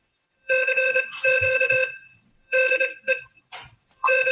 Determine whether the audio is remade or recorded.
remade